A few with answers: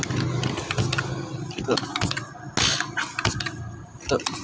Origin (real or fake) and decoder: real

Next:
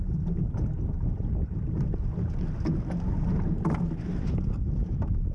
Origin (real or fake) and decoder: real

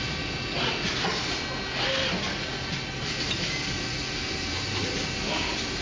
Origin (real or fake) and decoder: real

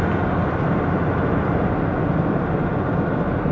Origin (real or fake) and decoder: real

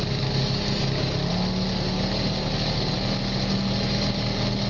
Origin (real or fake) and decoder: real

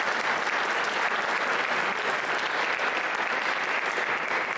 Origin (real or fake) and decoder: real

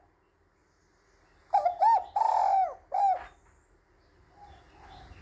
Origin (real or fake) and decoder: real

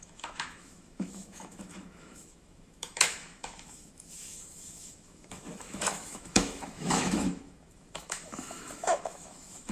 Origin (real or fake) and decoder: fake, autoencoder, DAC-VAE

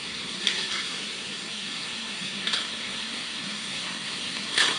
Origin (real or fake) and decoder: fake, codec, SNAC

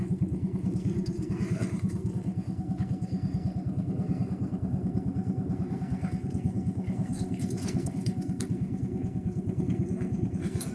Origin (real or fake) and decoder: fake, codec, SNAC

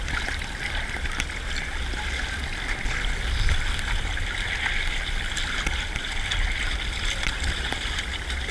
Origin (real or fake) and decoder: real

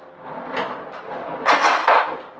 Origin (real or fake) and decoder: real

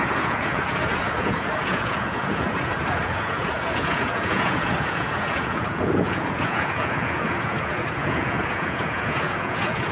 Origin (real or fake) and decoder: fake, vocoder, Vocos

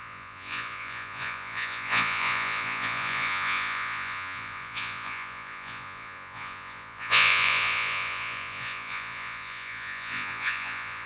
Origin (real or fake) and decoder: fake, vocoder, Vocos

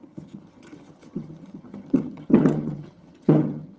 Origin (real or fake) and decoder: fake, vocoder, HiFi-GAN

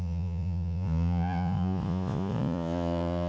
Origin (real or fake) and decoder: fake, vocoder, Vocos